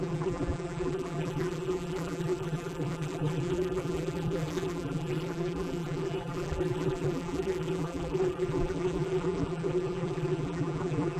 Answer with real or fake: fake